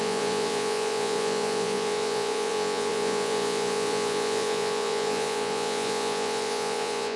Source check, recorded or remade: remade